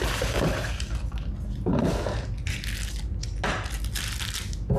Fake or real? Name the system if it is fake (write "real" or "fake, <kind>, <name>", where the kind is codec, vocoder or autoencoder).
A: real